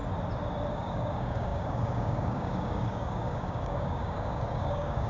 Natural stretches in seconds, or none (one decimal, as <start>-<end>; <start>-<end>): 0.0-0.7